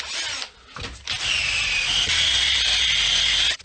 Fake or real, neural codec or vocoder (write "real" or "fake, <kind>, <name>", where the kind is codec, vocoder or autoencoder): real